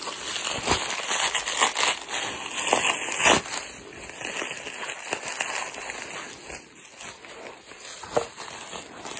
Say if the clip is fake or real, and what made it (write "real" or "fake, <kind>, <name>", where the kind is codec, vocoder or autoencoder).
real